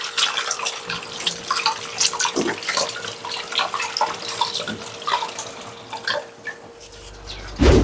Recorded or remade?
recorded